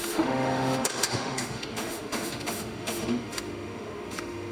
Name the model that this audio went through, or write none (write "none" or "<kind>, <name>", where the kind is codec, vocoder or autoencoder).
autoencoder, DAC-VAE